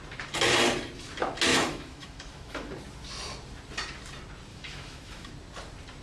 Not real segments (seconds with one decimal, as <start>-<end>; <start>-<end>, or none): 1.5-2.7; 4.5-5.3